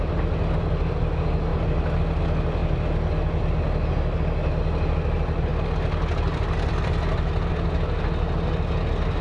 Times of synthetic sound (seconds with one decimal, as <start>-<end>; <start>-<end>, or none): none